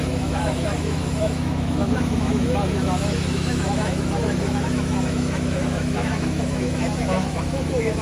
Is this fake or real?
fake